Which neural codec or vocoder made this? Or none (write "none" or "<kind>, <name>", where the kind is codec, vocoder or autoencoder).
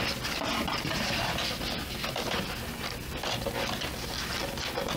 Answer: none